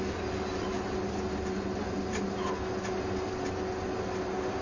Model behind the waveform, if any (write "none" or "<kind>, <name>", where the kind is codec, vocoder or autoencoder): none